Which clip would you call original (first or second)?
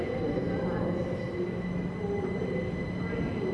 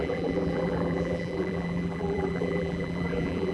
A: first